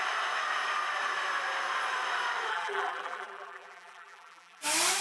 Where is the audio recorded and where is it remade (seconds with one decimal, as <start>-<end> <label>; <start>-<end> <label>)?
0.0-2.5 recorded; 2.5-4.6 remade; 4.6-5.0 recorded